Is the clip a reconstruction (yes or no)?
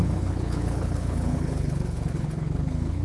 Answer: yes